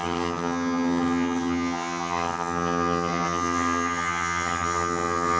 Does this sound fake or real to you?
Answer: fake